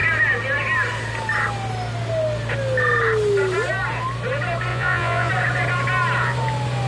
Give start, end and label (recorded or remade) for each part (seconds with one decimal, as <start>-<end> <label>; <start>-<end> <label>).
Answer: 0.0-4.7 recorded; 4.7-5.3 remade; 5.3-6.9 recorded